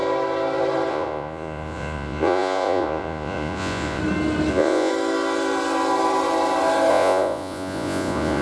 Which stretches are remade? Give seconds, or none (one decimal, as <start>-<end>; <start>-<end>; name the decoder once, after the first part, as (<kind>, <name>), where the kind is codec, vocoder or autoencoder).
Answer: 0.9-4.0 (vocoder, Vocos); 4.5-4.9; 6.9-8.4